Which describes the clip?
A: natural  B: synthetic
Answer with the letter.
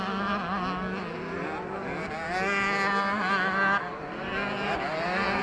A